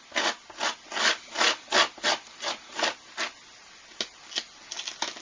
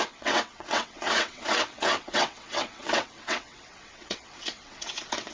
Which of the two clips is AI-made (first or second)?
second